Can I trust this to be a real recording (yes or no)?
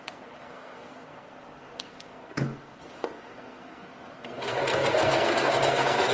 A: no